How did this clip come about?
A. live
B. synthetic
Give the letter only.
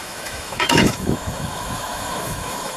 B